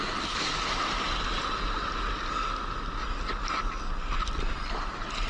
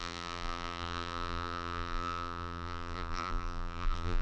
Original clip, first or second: first